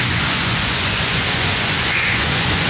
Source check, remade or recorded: remade